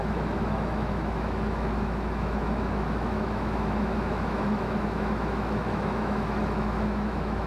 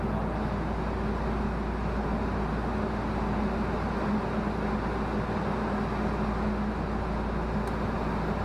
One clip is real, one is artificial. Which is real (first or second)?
second